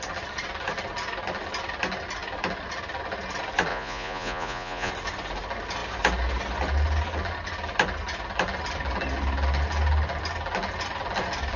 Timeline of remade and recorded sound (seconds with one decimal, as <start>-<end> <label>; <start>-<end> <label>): 0.0-3.7 recorded; 3.7-4.9 remade; 4.9-11.6 recorded